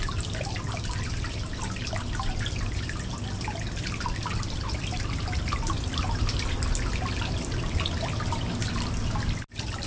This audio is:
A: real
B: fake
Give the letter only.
A